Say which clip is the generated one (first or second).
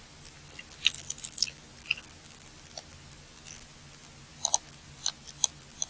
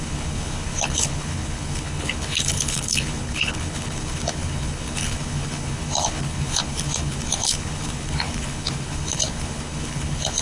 second